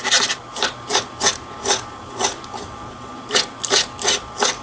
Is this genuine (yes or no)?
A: no